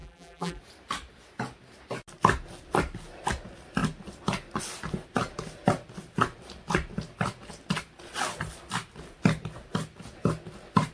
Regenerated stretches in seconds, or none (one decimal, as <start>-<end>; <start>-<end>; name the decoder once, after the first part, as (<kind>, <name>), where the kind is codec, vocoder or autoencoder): 0.0-0.6 (vocoder, BigVGAN v2)